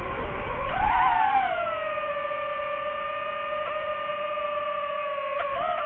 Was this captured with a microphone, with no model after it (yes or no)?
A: yes